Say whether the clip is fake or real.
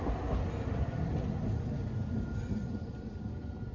real